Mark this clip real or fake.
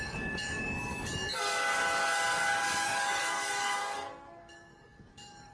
fake